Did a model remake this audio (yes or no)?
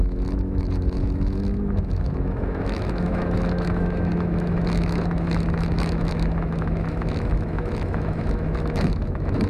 yes